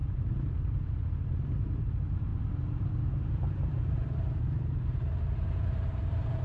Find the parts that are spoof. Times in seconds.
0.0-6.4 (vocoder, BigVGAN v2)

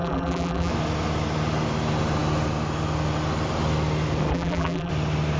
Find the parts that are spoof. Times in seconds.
0.0-0.7 (vocoder, BigVGAN v2); 4.3-4.9

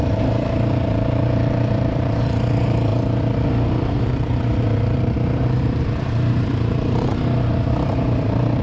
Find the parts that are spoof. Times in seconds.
0.0-2.9 (vocoder, BigVGAN v2); 3.9-7.1; 7.7-8.6